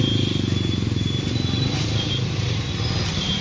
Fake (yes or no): no